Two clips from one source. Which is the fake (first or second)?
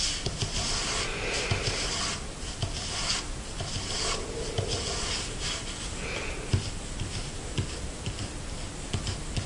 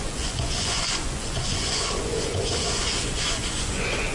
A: second